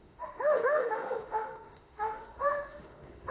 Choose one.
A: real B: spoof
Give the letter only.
B